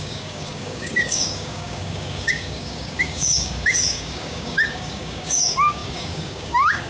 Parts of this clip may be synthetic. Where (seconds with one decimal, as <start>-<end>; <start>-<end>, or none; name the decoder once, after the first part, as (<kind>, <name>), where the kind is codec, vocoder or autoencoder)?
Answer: 0.0-6.9 (codec, DAC)